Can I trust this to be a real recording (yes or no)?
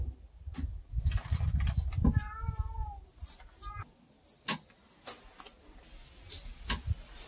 yes